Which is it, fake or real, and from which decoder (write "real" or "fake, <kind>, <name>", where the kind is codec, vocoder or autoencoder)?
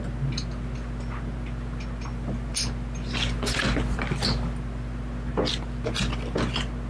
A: real